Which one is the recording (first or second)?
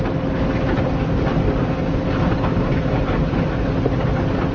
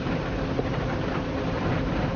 first